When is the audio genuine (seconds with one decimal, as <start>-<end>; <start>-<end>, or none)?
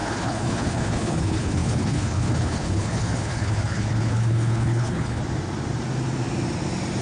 5.2-7.0